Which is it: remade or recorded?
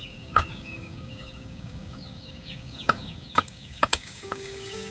remade